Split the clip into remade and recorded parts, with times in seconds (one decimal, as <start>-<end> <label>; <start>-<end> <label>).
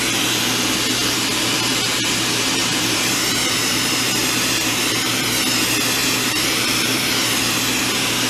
0.0-2.6 recorded; 2.6-5.1 remade; 5.1-6.0 recorded; 6.0-7.1 remade; 7.1-8.3 recorded